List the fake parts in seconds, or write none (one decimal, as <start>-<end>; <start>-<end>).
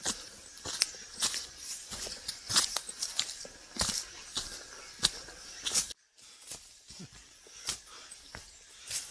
1.1-2.8